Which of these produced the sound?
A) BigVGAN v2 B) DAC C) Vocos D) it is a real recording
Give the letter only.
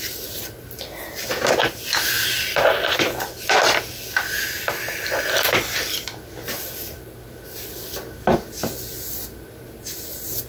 D